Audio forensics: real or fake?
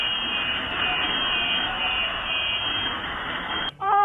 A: fake